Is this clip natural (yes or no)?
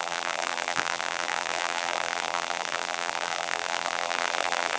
no